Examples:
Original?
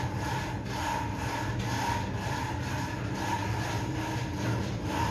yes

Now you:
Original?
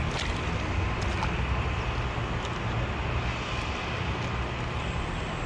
yes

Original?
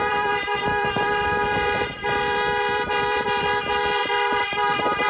no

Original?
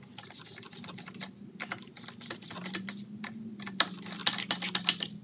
yes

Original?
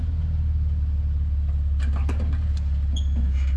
yes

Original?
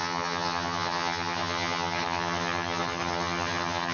no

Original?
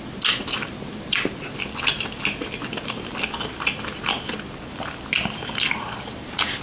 yes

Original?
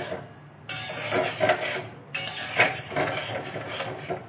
yes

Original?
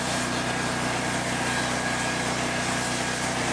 yes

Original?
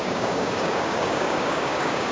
no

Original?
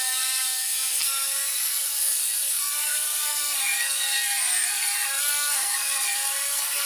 no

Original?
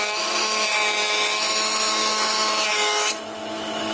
no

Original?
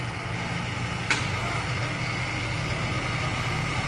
yes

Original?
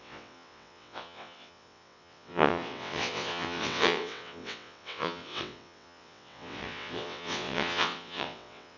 no